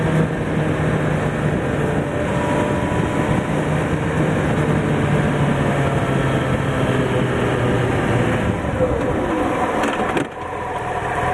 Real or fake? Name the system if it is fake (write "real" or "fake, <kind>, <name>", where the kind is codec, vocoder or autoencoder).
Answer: real